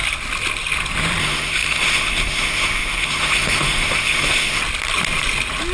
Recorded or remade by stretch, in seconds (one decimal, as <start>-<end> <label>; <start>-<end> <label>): 0.0-1.2 recorded; 1.2-4.6 remade; 4.6-5.7 recorded